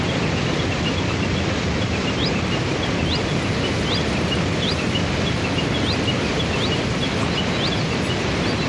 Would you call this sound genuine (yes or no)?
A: yes